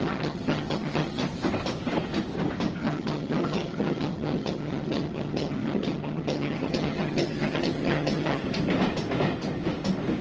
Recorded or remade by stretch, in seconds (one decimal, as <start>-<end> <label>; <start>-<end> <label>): 0.0-1.2 remade; 1.2-2.8 recorded; 2.8-8.4 remade; 8.4-10.2 recorded